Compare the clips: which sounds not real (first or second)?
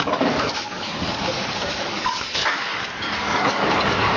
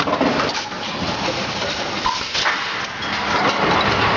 first